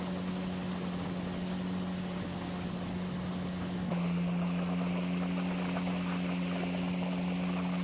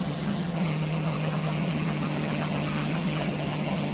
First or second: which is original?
first